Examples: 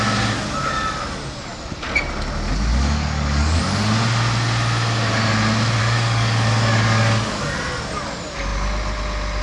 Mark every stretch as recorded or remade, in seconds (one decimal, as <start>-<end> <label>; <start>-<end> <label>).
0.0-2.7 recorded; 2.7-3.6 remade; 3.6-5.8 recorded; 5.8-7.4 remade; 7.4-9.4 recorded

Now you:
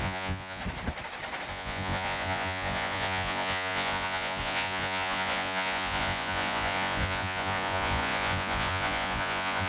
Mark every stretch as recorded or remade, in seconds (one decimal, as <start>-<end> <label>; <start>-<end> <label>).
0.0-0.6 remade; 0.6-1.5 recorded; 1.5-9.7 remade

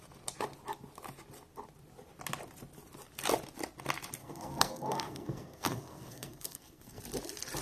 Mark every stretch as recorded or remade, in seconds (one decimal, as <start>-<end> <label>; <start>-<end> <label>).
0.0-4.2 recorded; 4.2-7.0 remade; 7.0-7.6 recorded

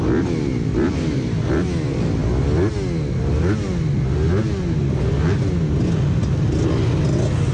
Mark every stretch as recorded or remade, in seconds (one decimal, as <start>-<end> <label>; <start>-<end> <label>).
0.0-7.5 recorded